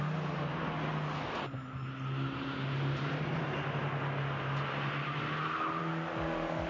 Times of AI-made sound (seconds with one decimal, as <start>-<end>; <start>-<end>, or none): none